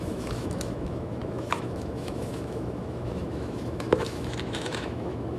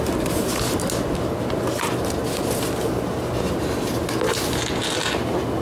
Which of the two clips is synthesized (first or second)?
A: first